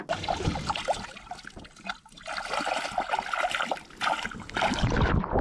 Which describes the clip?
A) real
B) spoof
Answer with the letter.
A